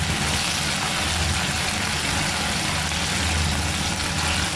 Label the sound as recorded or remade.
recorded